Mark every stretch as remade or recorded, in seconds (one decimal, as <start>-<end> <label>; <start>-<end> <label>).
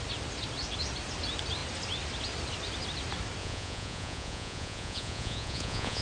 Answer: 0.0-3.4 recorded; 3.4-6.0 remade